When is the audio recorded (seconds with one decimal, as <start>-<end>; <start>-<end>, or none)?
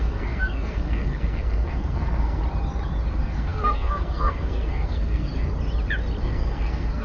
2.4-3.1; 5.3-6.2